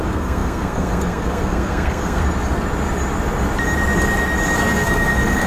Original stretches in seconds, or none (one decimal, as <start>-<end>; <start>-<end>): 2.2-4.6